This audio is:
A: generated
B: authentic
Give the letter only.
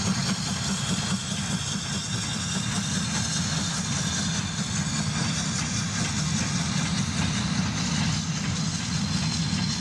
B